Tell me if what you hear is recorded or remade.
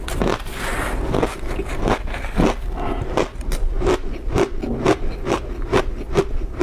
recorded